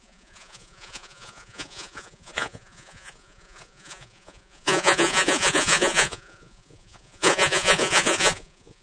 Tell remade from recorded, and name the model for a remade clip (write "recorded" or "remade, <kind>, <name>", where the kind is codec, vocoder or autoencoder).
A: remade, vocoder, Vocos